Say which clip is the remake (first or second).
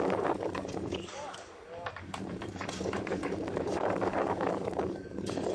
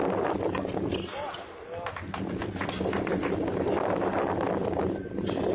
first